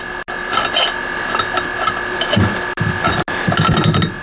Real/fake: real